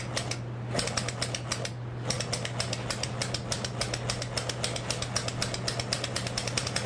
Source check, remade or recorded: recorded